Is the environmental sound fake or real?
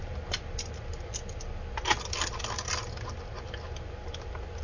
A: real